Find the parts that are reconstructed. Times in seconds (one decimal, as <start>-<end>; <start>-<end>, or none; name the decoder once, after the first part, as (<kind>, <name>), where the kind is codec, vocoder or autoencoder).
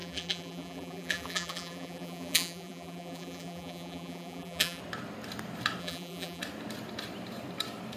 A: 0.0-4.8 (vocoder, BigVGAN v2); 5.8-6.4